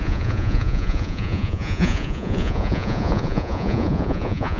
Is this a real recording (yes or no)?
no